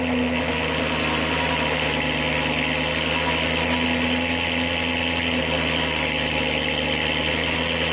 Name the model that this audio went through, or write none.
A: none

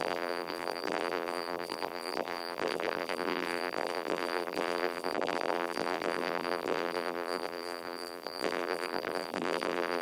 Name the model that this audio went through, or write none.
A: vocoder, BigVGAN v2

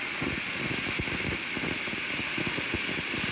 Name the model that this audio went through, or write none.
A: none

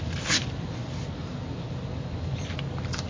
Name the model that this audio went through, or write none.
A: none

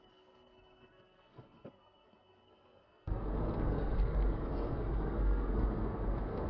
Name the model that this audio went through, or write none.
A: codec, SNAC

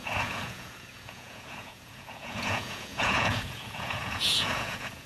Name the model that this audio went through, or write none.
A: vocoder, Vocos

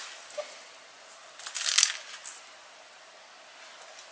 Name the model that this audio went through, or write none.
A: none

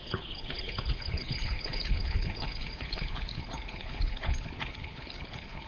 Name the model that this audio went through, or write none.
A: codec, HILCodec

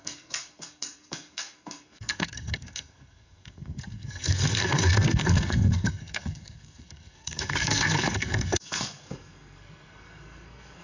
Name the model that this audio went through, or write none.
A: codec, SNAC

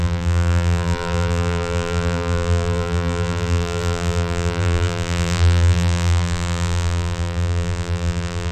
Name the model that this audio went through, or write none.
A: vocoder, BigVGAN v2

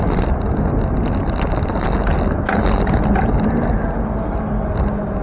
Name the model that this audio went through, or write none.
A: none